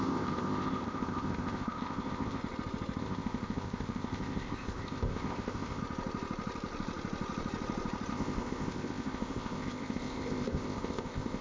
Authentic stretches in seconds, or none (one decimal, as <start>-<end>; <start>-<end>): 2.4-3.0; 5.8-8.1